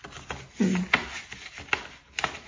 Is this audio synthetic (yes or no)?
no